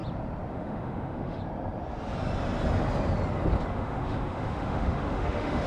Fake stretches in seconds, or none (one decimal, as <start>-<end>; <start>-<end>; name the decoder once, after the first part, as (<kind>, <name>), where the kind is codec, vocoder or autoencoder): 0.5-1.4 (autoencoder, DAC-VAE); 3.7-5.7